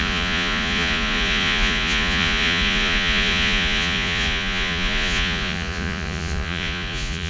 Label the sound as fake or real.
fake